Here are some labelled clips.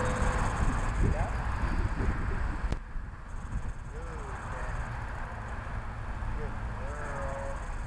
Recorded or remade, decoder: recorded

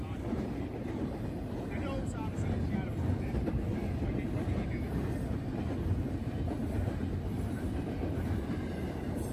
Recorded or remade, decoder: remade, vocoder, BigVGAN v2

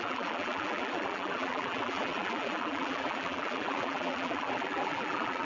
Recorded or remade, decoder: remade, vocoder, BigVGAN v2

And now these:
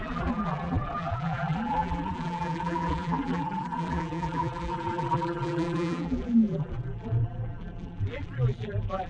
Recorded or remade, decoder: remade, vocoder, BigVGAN v2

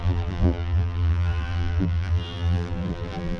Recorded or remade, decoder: remade, vocoder, BigVGAN v2